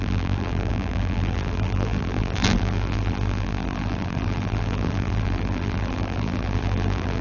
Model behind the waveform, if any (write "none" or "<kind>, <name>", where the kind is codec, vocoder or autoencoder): vocoder, BigVGAN v2